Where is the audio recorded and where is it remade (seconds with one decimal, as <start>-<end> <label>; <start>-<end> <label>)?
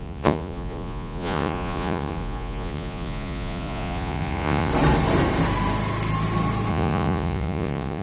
0.0-4.7 remade; 4.7-6.7 recorded; 6.7-8.0 remade